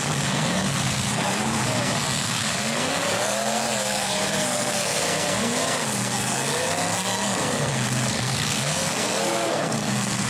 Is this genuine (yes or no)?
no